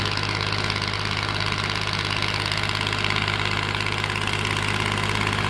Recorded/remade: recorded